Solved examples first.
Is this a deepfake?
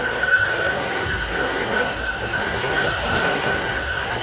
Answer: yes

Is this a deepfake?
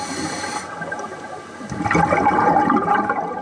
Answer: no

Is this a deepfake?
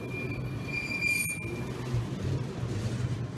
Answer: no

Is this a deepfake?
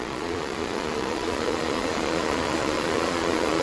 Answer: yes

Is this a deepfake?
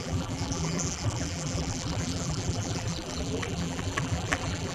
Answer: yes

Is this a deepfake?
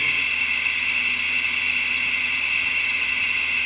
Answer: no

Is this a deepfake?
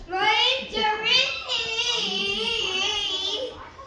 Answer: no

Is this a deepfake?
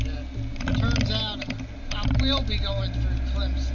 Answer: no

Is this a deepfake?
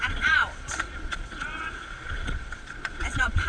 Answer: yes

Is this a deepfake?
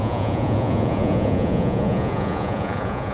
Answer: yes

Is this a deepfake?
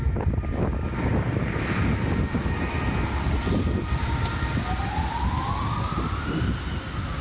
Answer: no